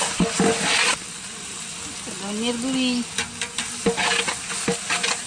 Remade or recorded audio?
recorded